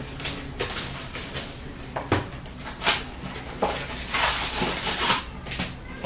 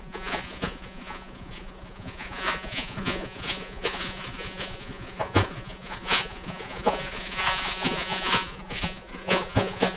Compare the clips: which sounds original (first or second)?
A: first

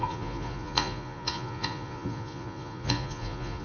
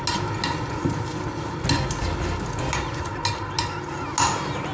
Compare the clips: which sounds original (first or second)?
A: second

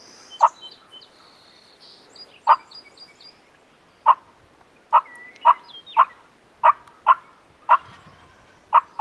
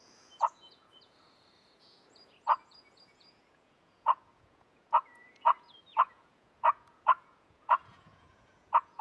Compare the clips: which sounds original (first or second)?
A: first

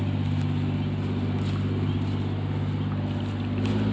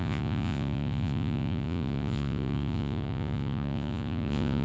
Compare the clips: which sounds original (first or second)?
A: first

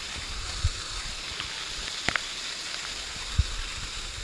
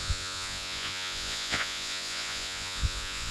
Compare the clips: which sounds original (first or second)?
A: first